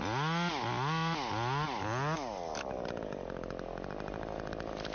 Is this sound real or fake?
real